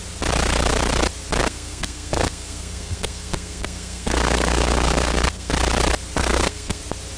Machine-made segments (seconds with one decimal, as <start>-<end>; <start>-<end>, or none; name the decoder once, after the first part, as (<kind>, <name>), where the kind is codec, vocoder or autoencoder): 1.4-5.5 (codec, SNAC); 6.2-6.8